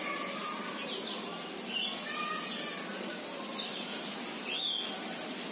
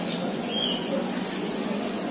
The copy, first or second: second